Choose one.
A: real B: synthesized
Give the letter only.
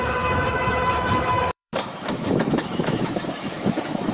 B